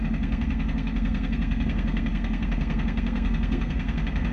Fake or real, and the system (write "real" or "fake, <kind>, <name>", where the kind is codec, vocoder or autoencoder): fake, codec, SNAC